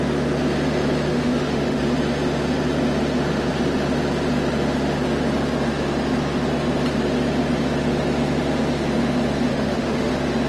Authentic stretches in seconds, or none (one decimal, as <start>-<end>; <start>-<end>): 0.0-1.1; 1.8-9.5; 10.1-10.5